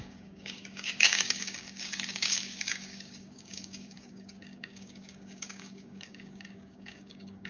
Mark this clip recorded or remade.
remade